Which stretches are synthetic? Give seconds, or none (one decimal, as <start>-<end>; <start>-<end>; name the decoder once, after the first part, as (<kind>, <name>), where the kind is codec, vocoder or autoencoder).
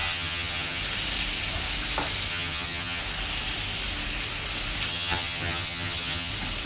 0.0-0.8 (vocoder, HiFi-GAN); 2.3-3.0; 4.9-6.3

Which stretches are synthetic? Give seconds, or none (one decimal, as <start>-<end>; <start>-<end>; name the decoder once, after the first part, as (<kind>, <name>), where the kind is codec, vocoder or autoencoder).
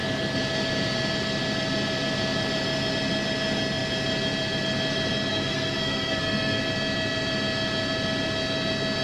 5.3-6.6 (codec, SNAC)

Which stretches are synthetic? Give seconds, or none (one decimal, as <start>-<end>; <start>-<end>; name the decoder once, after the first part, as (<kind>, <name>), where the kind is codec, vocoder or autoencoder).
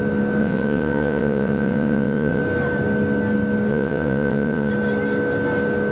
0.4-2.4 (vocoder, WaveNeXt); 3.7-4.7